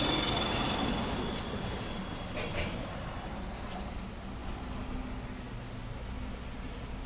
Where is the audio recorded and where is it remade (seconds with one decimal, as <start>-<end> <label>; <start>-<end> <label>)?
0.0-7.1 recorded